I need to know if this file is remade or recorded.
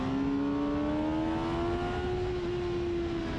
recorded